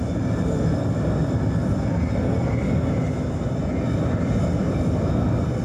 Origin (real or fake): real